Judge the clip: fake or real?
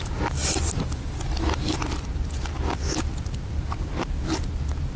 real